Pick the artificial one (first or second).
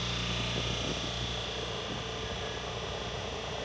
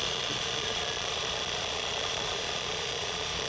second